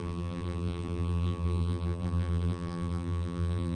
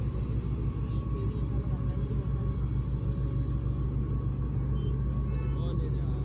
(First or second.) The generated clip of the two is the first